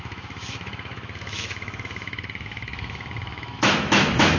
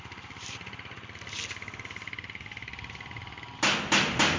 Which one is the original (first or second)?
second